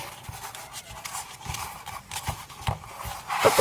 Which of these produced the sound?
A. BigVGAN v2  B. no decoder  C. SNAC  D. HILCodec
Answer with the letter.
B